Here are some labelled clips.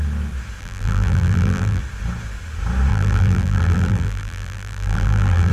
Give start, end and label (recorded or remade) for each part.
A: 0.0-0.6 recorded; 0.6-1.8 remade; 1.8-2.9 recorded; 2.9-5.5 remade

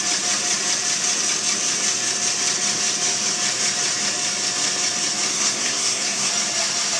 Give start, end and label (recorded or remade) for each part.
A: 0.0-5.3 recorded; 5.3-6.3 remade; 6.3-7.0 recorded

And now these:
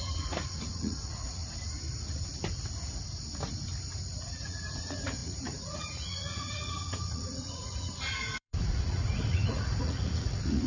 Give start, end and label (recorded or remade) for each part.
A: 0.0-1.4 remade; 1.4-4.1 recorded; 4.1-10.7 remade

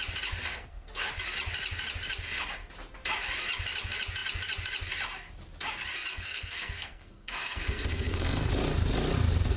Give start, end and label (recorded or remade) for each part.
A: 0.0-0.5 recorded; 0.5-1.1 remade; 1.1-6.1 recorded; 6.1-8.5 remade; 8.5-9.6 recorded